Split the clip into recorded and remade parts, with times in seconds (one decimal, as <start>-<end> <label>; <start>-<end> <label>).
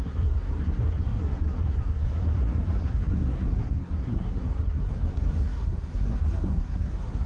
0.0-7.3 remade